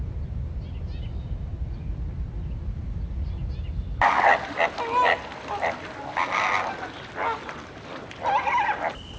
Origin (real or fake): real